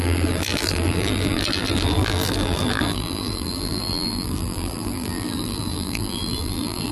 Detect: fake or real fake